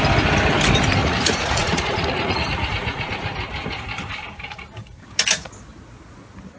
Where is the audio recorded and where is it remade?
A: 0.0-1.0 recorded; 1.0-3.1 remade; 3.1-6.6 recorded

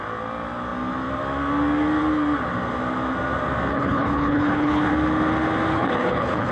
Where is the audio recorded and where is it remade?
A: 0.0-3.7 recorded; 3.7-4.9 remade; 4.9-5.7 recorded; 5.7-6.5 remade

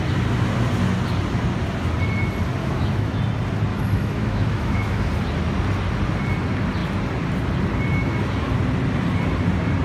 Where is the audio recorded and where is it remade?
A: 0.0-2.6 recorded; 2.6-3.2 remade; 3.2-3.7 recorded; 3.7-5.0 remade; 5.0-9.8 recorded

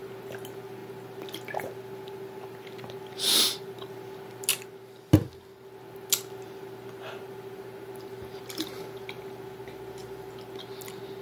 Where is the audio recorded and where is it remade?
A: 0.0-11.2 recorded

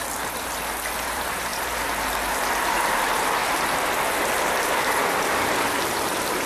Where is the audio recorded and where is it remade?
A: 0.0-1.5 remade; 1.5-2.5 recorded; 2.5-3.4 remade; 3.4-4.1 recorded; 4.1-6.5 remade

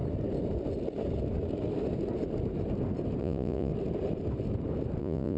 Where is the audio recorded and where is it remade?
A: 0.0-3.2 recorded; 3.2-3.7 remade; 3.7-5.0 recorded; 5.0-5.4 remade

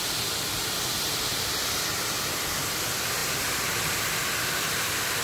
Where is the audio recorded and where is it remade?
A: 0.0-5.2 recorded

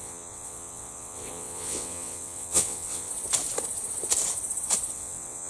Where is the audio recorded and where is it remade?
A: 0.0-3.1 remade; 3.1-4.9 recorded; 4.9-5.5 remade